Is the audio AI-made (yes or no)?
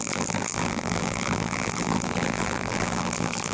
yes